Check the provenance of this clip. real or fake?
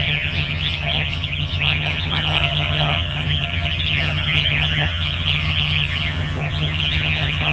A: fake